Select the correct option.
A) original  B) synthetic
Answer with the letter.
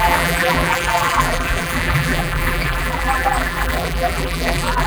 B